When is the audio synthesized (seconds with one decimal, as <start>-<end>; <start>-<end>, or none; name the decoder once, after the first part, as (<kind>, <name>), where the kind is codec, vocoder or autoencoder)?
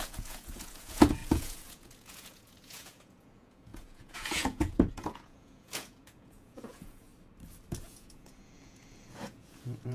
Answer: 0.0-7.1 (vocoder, Vocos); 7.8-9.9